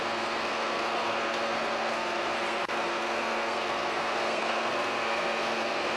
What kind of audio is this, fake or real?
fake